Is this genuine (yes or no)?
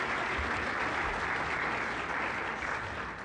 yes